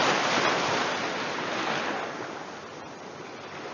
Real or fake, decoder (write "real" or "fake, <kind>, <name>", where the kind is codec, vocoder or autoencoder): real